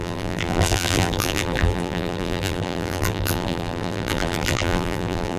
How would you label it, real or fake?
fake